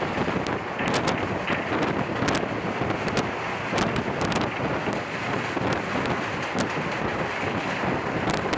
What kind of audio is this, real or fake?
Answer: real